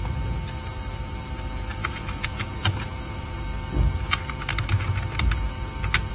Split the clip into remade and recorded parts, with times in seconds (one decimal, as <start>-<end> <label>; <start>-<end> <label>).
0.0-1.8 recorded; 1.8-3.3 remade; 3.3-6.1 recorded